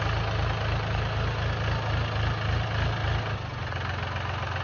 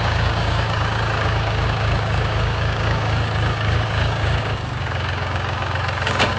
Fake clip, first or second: second